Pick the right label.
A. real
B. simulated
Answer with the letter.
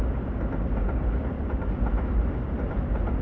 A